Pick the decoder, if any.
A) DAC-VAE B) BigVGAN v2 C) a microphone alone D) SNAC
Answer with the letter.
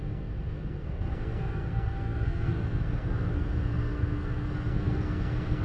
D